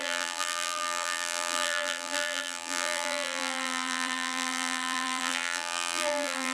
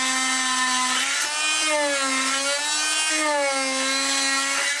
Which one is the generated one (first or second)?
first